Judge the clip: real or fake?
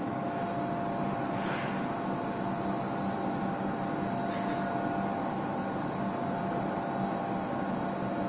real